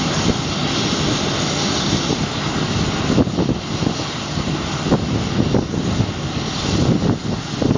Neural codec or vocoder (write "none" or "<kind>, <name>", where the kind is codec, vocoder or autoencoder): none